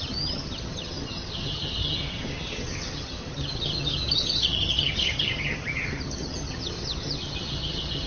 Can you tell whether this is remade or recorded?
remade